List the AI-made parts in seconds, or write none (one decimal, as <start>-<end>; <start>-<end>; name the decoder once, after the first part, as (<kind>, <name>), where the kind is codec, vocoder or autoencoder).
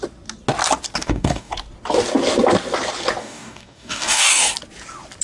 1.0-1.5 (codec, DAC); 3.2-4.5